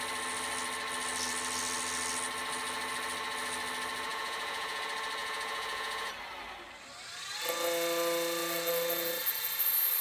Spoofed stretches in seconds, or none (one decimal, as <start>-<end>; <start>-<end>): 4.1-4.8; 5.2-6.1